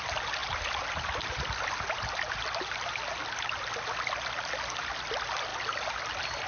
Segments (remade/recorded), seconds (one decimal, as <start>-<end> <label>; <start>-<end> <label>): 0.0-6.5 recorded